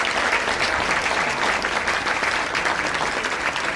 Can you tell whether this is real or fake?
real